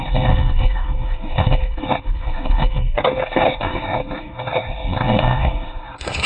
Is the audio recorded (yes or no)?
no